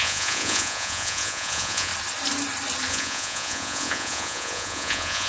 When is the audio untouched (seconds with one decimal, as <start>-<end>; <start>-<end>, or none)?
1.9-2.9